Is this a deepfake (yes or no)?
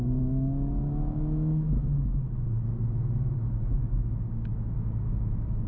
yes